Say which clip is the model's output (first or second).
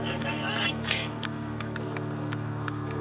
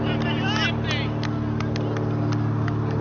first